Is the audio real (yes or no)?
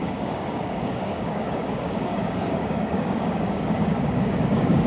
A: no